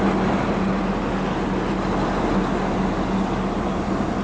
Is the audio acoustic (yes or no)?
yes